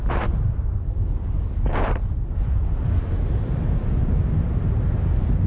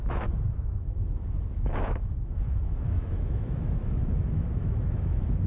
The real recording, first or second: first